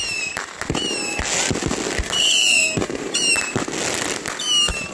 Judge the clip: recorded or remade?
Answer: recorded